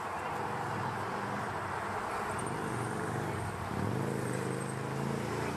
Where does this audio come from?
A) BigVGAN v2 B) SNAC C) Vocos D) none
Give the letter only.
D